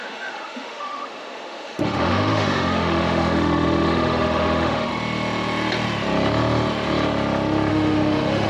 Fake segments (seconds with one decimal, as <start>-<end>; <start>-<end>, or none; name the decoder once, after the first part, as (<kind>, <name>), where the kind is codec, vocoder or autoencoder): 0.0-4.9 (autoencoder, DAC-VAE); 7.7-8.5